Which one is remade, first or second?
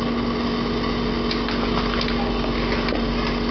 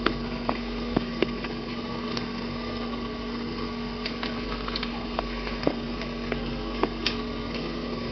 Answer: second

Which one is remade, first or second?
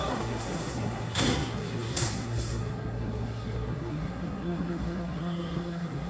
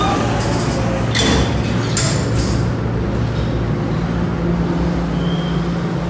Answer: first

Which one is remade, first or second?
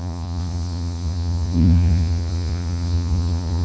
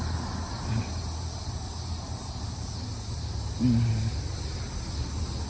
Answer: first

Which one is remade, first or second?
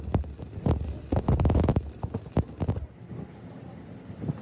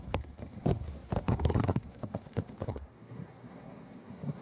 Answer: second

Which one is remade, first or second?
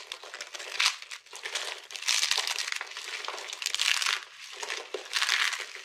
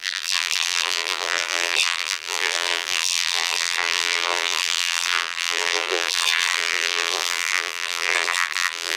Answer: second